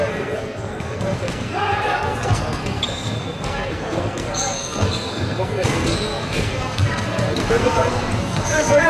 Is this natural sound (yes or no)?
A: no